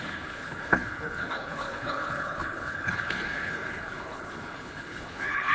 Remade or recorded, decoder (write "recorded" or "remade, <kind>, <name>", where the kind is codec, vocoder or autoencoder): remade, codec, HILCodec